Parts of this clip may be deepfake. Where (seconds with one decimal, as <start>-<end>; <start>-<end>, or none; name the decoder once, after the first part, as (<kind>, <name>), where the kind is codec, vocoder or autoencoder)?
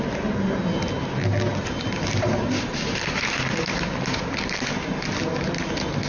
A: none